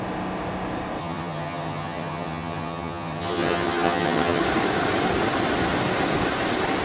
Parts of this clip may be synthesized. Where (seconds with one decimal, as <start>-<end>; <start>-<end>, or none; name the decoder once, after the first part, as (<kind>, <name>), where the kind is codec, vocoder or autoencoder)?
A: 1.0-4.4 (vocoder, HiFi-GAN)

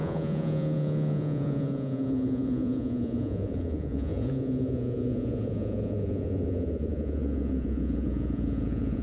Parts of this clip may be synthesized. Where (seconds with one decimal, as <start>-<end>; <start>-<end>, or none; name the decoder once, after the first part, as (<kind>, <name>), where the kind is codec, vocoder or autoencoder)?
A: 0.0-9.0 (vocoder, Vocos)